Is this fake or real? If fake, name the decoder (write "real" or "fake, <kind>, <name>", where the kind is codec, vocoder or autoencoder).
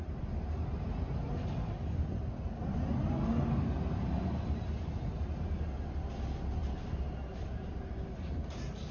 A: real